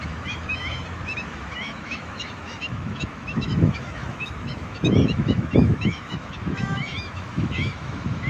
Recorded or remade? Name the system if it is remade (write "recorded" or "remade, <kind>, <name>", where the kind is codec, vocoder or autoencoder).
remade, autoencoder, DAC-VAE